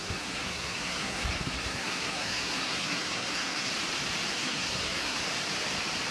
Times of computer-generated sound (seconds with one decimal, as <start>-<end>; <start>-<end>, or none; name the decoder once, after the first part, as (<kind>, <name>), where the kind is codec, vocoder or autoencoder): 0.0-3.7 (codec, SNAC); 4.3-5.2